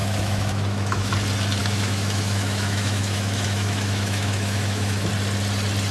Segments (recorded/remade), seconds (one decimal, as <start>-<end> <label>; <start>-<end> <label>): 0.0-1.1 remade; 1.1-1.6 recorded; 1.6-5.1 remade; 5.1-5.9 recorded